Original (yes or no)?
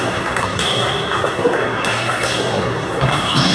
no